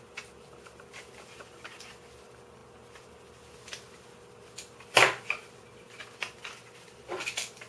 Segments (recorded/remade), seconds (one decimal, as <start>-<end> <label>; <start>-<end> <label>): 0.0-7.7 recorded